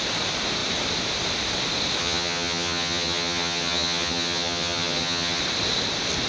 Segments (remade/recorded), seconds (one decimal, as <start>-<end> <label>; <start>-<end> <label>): 0.0-2.0 recorded; 2.0-5.4 remade; 5.4-6.3 recorded